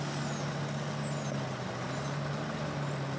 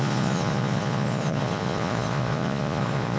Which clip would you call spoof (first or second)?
second